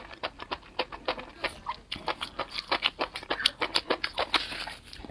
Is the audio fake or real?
real